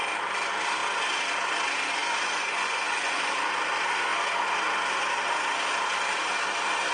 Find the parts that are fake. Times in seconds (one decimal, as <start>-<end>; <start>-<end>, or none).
2.0-3.3